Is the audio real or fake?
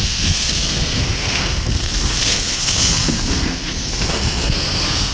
fake